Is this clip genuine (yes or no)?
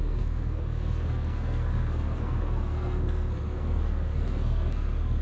no